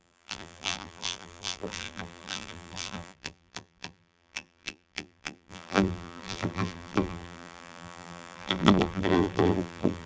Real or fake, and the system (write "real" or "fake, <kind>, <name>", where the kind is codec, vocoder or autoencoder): fake, vocoder, BigVGAN v2